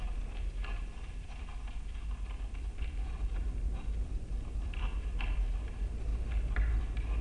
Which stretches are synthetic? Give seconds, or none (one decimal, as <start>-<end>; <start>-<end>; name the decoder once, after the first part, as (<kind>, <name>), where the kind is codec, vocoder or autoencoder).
none